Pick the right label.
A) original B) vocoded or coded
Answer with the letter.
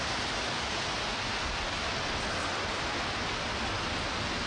A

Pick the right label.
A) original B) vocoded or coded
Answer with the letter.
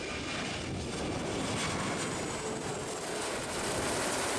A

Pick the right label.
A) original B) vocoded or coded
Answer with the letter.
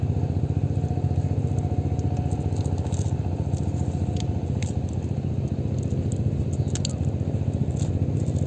A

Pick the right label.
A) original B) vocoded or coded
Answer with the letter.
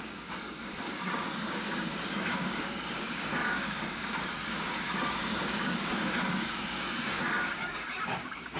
B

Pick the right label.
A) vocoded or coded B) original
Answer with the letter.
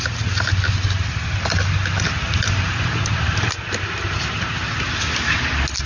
B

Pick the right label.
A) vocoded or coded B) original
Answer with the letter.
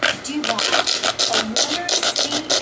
B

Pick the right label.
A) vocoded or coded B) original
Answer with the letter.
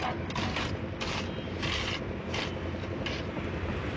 B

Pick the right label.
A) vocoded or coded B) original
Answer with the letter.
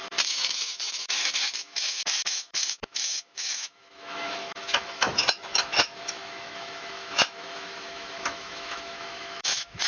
A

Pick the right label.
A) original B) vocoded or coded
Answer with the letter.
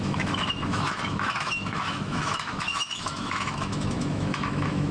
B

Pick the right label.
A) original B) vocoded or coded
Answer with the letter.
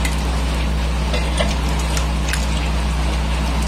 A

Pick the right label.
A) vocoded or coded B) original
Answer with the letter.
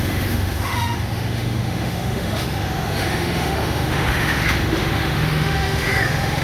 A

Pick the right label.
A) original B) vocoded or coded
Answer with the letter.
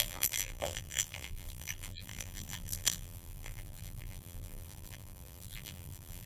B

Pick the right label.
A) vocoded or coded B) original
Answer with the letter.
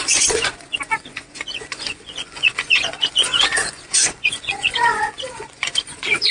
A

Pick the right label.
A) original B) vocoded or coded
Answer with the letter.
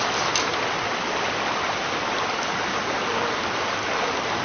A